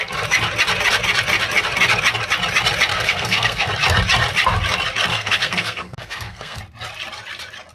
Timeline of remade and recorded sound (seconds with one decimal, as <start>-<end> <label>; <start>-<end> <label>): 0.0-2.9 recorded; 2.9-3.7 remade; 3.7-5.1 recorded; 5.1-6.6 remade; 6.6-7.7 recorded